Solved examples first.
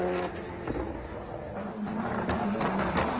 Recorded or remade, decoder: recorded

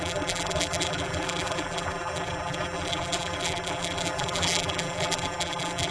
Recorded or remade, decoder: remade, vocoder, BigVGAN v2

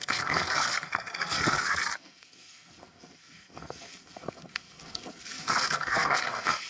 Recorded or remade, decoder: remade, codec, SNAC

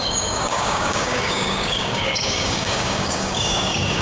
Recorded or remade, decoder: remade, codec, DAC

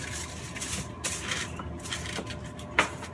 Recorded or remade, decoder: recorded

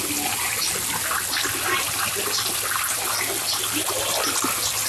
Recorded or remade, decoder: recorded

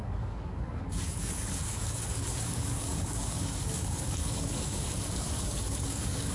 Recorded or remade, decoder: remade, codec, DAC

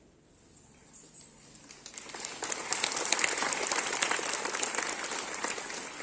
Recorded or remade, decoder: recorded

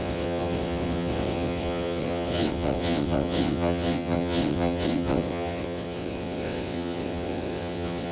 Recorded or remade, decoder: remade, vocoder, WaveNeXt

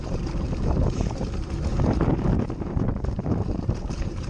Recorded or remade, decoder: remade, vocoder, BigVGAN v2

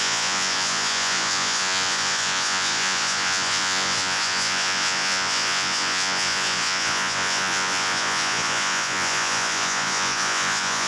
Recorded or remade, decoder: remade, vocoder, Vocos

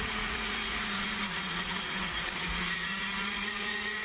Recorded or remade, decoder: remade, vocoder, Vocos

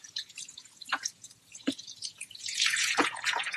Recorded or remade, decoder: remade, vocoder, Vocos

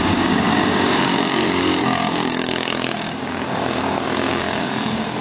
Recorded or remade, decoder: remade, codec, DAC